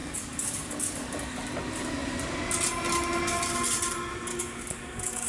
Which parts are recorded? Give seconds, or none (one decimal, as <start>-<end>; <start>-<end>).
1.4-4.3